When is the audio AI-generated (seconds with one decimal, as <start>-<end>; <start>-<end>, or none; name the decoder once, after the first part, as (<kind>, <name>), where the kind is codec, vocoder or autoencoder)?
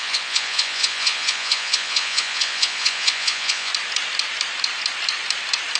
0.0-3.7 (vocoder, Vocos)